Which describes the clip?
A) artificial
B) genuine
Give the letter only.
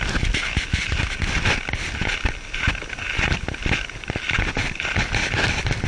B